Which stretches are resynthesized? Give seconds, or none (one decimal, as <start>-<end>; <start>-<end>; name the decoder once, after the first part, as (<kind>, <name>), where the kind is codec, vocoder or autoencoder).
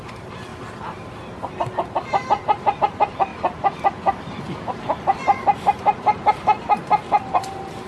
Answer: 0.0-0.5 (vocoder, BigVGAN v2); 2.8-3.3; 4.4-7.9